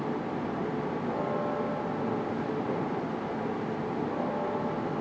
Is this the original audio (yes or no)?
yes